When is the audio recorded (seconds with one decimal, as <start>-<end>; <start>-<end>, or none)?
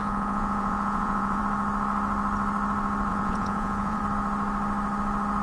1.4-3.1; 4.0-5.4